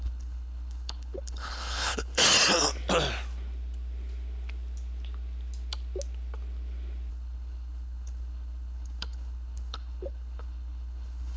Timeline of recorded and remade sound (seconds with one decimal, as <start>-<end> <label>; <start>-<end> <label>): 0.0-2.2 remade; 2.2-7.1 recorded; 7.1-11.4 remade